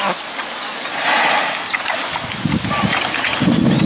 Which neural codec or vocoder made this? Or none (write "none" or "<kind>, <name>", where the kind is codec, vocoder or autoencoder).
none